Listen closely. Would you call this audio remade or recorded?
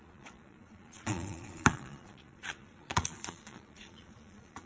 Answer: remade